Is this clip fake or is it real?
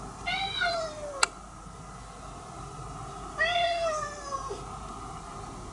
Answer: real